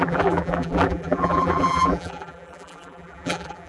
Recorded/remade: remade